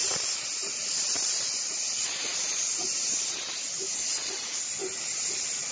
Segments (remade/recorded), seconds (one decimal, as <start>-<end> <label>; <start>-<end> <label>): 0.0-5.7 recorded